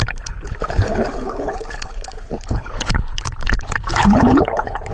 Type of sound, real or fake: fake